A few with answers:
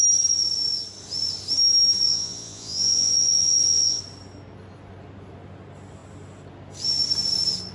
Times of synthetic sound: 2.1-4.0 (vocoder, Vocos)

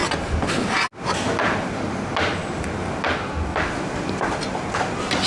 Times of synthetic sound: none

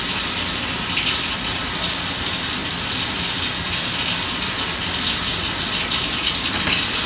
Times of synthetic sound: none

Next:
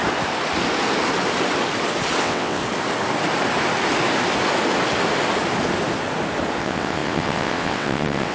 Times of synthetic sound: 2.2-2.6 (vocoder, WaveNeXt); 6.6-8.3

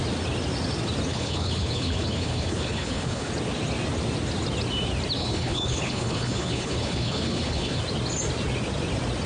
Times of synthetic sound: 1.1-3.3 (codec, HILCodec); 5.2-7.8

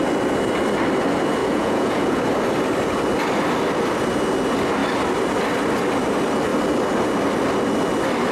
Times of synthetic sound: 1.4-2.2 (vocoder, Vocos)

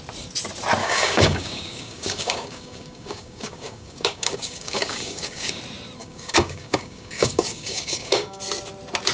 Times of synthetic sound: 0.8-5.6 (codec, DAC); 6.0-8.4

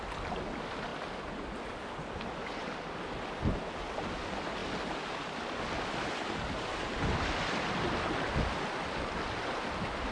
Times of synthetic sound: none